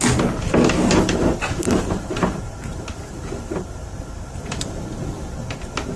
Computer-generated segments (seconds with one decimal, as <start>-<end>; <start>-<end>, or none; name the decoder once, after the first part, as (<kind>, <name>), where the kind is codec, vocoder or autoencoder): 1.4-4.8 (vocoder, BigVGAN v2)